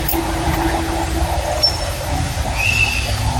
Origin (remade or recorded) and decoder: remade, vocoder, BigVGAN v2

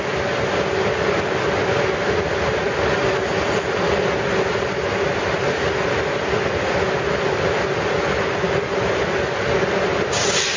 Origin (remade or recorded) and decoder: recorded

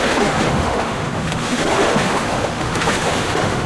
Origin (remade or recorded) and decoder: remade, autoencoder, DAC-VAE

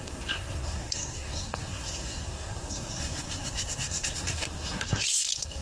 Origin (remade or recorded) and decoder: remade, codec, SNAC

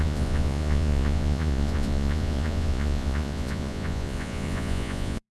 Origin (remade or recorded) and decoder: remade, vocoder, Vocos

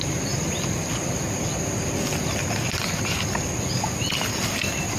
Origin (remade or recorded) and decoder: recorded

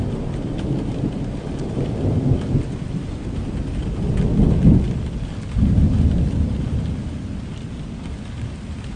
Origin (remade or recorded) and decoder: recorded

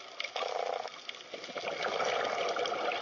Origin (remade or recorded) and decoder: recorded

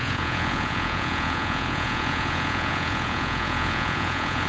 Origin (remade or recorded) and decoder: remade, vocoder, Vocos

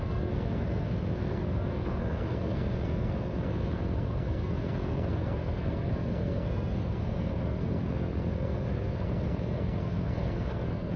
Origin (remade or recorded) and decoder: remade, codec, SNAC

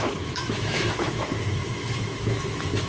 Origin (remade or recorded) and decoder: remade, autoencoder, DAC-VAE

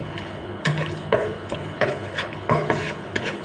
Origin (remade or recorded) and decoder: remade, codec, HILCodec